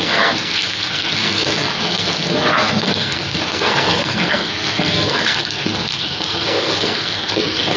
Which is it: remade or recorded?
remade